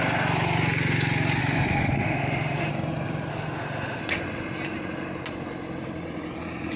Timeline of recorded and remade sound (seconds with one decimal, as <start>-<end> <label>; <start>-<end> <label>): 0.0-1.4 recorded; 1.4-2.7 remade; 2.7-3.3 recorded; 3.3-4.0 remade; 4.0-6.8 recorded